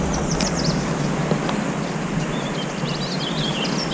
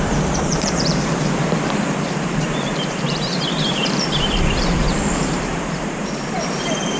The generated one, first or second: second